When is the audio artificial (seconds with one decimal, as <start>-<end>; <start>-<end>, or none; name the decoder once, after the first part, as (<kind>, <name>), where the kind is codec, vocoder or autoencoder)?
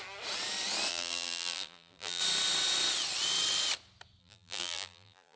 0.9-2.2 (vocoder, BigVGAN v2); 4.2-5.4